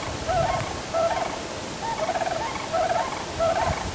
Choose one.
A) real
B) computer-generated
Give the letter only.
A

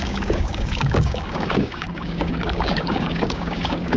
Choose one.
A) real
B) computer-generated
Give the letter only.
B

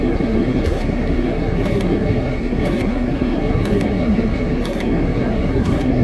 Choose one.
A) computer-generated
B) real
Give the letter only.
A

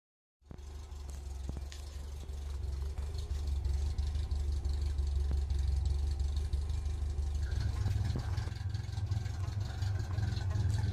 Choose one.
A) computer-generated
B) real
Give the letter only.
B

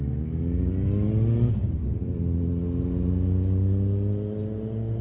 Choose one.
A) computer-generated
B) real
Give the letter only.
B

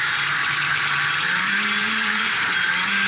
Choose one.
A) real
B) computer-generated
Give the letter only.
B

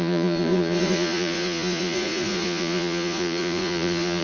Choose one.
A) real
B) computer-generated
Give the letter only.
B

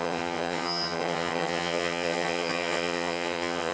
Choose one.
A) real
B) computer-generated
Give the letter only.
B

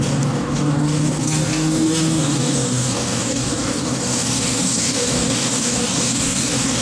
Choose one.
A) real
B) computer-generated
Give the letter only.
B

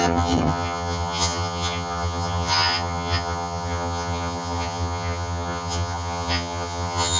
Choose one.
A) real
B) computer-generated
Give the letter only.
B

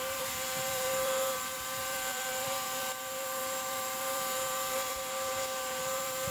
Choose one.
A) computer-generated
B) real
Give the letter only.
A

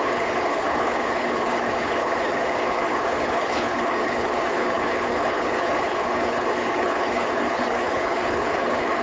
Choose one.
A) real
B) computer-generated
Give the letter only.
B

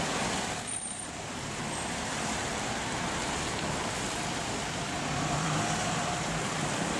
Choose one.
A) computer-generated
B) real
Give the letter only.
A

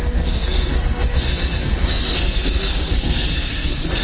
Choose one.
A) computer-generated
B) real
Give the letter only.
A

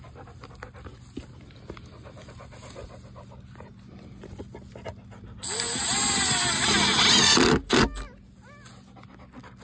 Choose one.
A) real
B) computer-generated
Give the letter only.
A